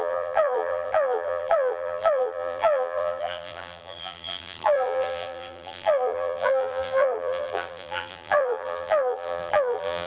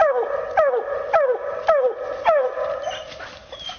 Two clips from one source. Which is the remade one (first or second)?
first